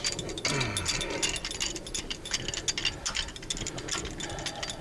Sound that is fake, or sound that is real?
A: real